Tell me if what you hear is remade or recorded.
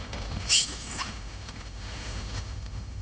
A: remade